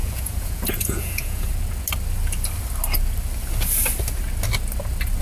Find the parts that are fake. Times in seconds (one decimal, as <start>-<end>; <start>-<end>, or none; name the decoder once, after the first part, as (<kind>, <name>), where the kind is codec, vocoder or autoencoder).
0.0-1.5 (vocoder, Vocos)